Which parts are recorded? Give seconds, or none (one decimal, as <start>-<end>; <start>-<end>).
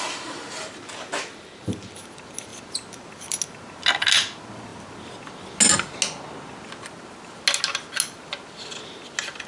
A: 0.0-9.5